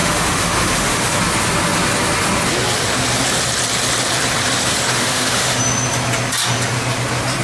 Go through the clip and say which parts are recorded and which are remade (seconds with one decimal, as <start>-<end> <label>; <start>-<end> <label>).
0.0-1.2 remade; 1.2-4.9 recorded; 4.9-5.6 remade; 5.6-7.4 recorded